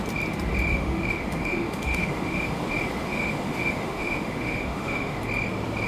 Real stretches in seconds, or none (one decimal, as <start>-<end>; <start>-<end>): 0.0-0.7; 2.6-3.0; 5.2-5.9